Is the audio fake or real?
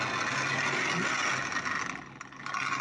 real